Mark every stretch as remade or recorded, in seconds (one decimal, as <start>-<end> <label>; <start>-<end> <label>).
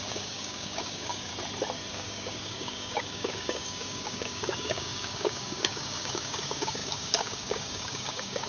0.0-1.3 remade; 1.3-1.9 recorded; 1.9-8.5 remade